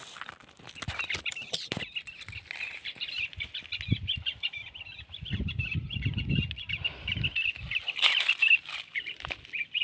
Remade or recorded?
recorded